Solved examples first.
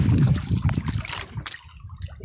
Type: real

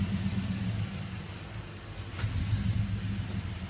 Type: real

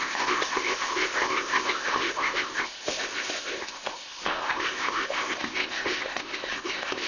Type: fake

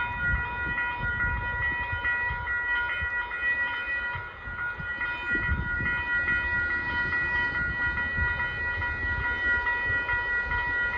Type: real